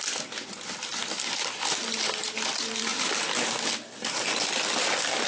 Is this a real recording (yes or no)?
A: yes